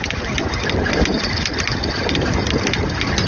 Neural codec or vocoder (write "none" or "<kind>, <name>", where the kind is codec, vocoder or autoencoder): none